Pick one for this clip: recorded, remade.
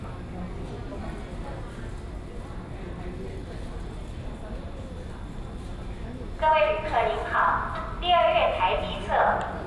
recorded